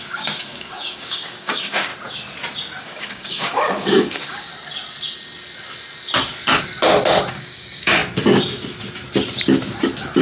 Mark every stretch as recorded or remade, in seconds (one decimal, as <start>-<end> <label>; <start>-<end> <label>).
0.0-1.9 remade; 1.9-2.8 recorded; 2.8-4.5 remade; 4.5-7.3 recorded; 7.3-8.0 remade; 8.0-10.2 recorded